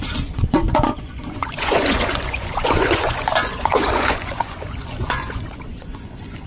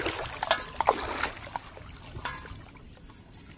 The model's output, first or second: first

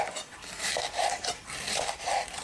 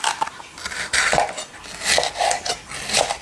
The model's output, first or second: first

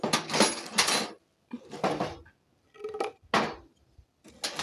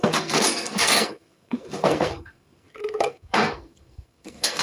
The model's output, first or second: second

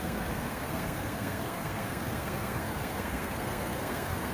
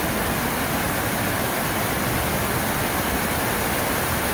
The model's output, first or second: first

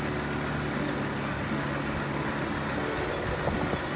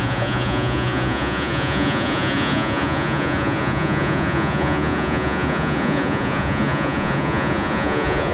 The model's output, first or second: second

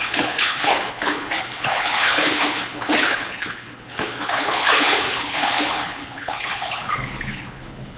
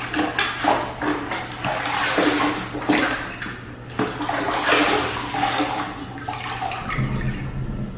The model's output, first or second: first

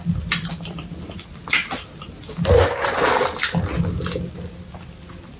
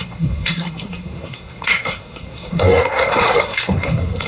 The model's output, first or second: second